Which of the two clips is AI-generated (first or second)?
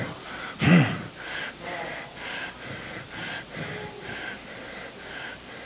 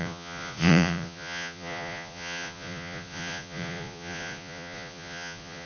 second